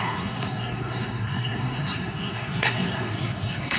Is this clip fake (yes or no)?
yes